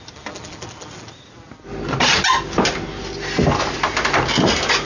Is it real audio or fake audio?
real